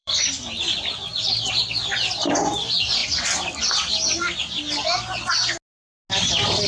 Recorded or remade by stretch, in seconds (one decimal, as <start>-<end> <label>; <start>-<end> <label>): 0.0-1.5 remade; 1.5-3.0 recorded; 3.0-4.4 remade; 4.4-6.7 recorded